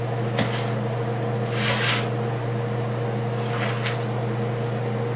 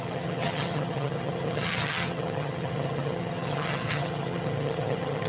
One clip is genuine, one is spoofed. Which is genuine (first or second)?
first